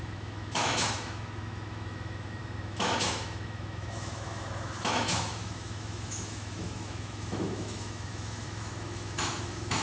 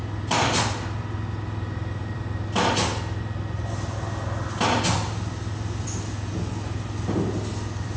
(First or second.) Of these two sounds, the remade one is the first